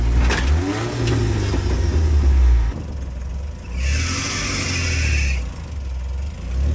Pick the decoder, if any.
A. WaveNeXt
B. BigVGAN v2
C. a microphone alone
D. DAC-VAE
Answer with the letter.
C